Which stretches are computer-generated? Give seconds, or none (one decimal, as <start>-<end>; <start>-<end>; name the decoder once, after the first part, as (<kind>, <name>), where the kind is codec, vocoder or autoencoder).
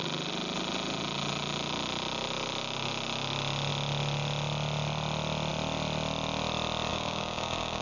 6.9-7.8 (codec, DAC)